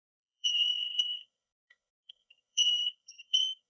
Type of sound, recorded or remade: remade